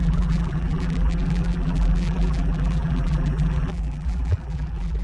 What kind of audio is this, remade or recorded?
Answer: remade